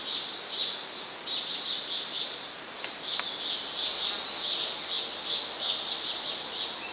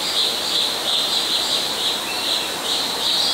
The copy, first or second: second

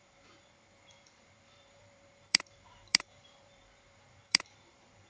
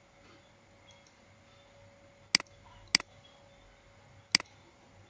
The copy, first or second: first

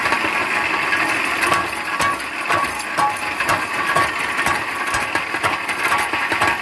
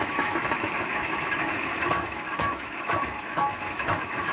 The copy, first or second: second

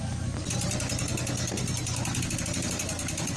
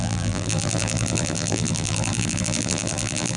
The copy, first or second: second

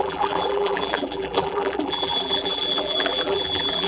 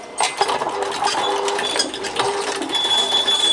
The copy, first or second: first